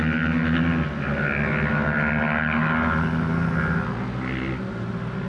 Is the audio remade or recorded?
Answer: recorded